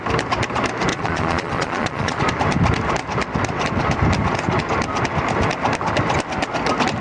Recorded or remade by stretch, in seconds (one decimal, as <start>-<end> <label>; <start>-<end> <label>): 0.0-0.9 recorded; 0.9-2.2 remade; 2.2-7.0 recorded